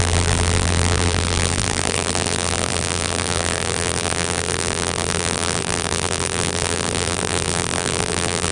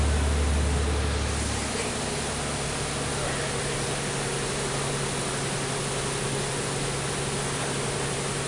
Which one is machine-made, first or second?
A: first